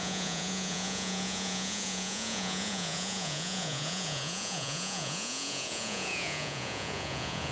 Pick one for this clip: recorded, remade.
remade